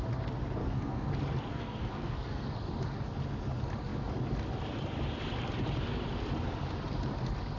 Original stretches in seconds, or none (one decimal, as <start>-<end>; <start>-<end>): 0.0-0.6; 1.1-1.5; 2.5-7.6

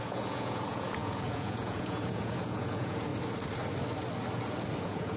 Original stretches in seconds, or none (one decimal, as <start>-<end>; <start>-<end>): 3.1-4.8

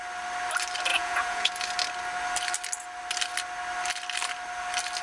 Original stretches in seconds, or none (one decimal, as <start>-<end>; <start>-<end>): 0.0-0.9; 1.5-5.0

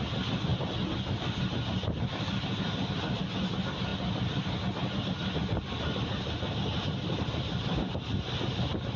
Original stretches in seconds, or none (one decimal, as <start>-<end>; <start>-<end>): 0.0-9.0

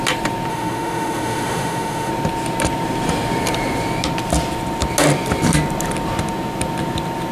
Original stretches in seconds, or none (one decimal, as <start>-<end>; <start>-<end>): 0.0-0.5; 2.1-7.3